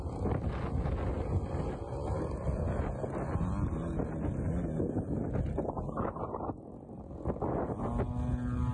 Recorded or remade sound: recorded